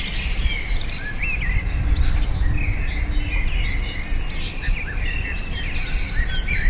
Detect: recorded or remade recorded